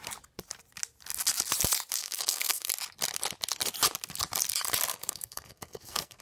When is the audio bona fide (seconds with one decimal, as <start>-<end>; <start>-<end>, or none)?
0.0-2.0; 2.7-4.9